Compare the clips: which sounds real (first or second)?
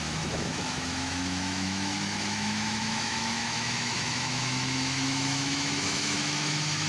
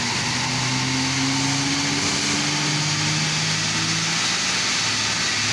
second